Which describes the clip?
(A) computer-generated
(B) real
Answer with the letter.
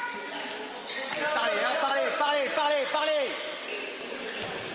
B